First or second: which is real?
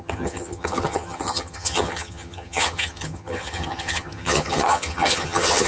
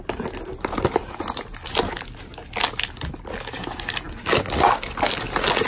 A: second